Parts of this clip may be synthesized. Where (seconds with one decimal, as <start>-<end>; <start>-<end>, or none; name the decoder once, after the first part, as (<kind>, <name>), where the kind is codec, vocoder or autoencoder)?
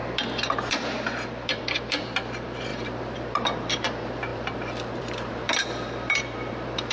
0.7-6.9 (vocoder, BigVGAN v2)